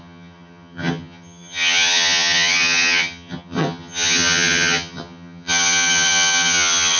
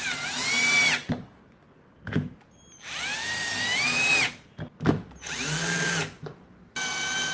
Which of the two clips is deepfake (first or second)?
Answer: first